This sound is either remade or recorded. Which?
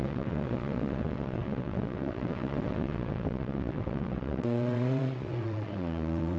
remade